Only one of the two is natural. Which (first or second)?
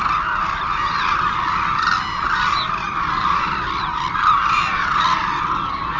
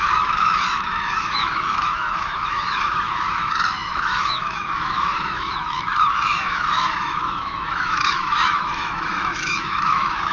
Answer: first